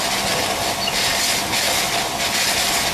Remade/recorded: recorded